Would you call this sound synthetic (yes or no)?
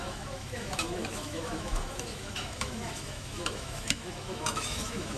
yes